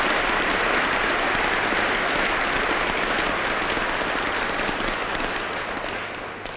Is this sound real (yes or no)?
yes